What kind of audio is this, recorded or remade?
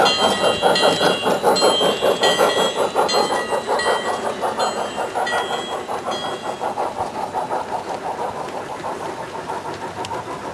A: recorded